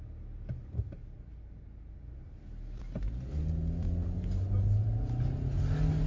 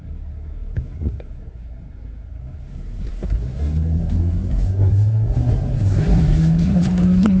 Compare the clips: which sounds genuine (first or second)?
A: first